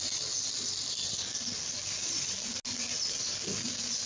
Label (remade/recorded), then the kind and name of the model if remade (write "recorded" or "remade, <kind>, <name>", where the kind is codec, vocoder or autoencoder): recorded